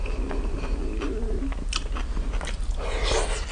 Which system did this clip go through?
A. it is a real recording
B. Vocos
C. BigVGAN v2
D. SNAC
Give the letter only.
A